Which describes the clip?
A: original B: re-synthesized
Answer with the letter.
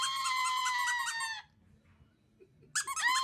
A